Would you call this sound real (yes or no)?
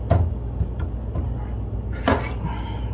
yes